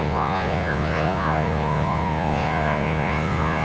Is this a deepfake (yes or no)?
yes